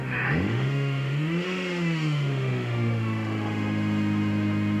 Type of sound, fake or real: fake